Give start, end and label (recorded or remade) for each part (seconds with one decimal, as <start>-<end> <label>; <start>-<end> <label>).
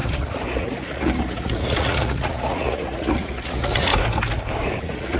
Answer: 0.0-3.9 remade; 3.9-4.8 recorded; 4.8-5.2 remade